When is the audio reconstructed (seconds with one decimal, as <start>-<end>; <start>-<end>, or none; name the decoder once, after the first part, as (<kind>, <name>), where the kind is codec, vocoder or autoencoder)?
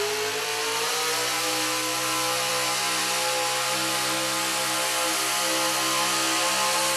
none